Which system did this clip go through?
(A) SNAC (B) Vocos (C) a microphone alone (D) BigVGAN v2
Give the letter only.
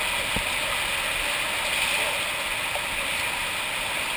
C